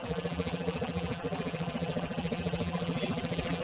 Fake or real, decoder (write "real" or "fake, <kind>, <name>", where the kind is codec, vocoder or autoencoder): fake, vocoder, BigVGAN v2